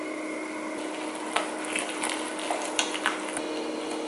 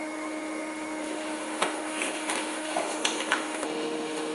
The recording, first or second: first